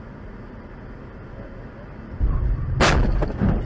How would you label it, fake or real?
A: real